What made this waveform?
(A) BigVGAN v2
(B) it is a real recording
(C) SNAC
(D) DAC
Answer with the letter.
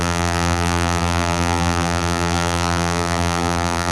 A